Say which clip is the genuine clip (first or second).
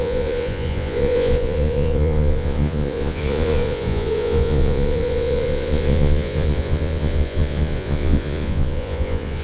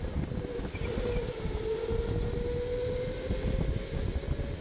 second